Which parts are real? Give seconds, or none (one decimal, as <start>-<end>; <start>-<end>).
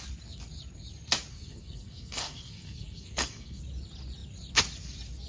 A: 0.0-1.3; 3.6-5.3